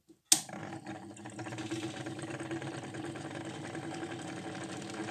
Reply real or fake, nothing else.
real